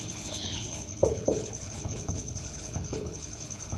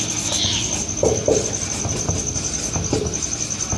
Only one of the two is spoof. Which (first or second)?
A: first